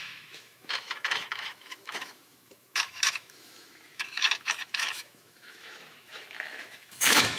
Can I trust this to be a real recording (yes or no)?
no